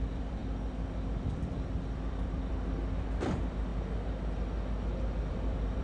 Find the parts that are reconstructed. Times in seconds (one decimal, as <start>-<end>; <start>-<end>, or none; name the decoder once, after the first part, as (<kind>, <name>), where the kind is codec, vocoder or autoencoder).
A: 0.0-3.7 (vocoder, BigVGAN v2); 5.3-5.8